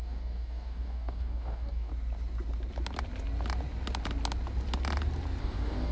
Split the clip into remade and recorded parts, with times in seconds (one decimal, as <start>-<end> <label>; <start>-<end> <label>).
0.0-1.9 remade; 1.9-5.4 recorded; 5.4-5.9 remade